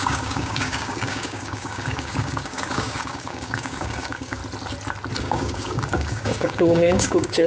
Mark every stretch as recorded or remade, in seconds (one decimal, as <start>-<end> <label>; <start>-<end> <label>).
0.0-4.4 remade; 4.4-5.2 recorded; 5.2-7.5 remade